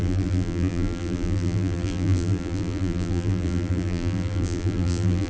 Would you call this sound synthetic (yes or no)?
yes